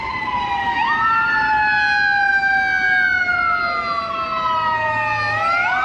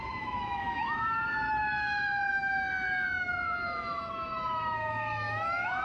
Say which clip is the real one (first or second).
first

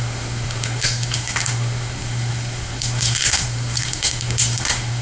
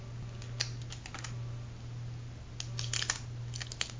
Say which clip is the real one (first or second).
second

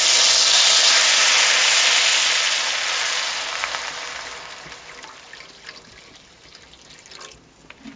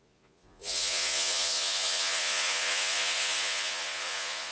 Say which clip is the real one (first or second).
first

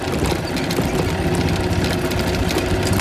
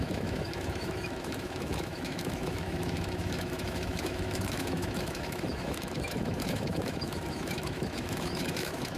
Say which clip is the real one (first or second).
first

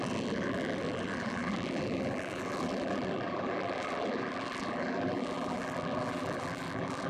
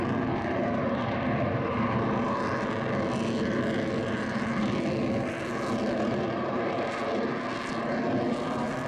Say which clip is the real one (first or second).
second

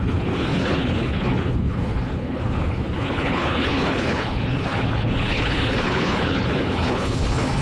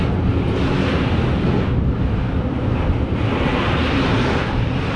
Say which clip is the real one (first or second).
second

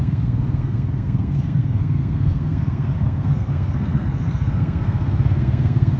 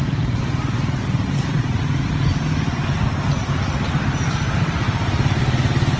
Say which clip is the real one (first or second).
second